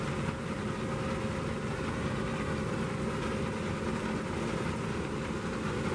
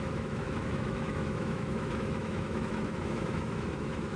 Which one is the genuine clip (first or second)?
first